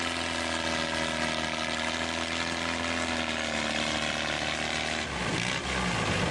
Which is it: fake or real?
real